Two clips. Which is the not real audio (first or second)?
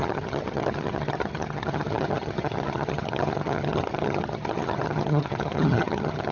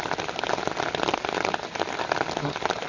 first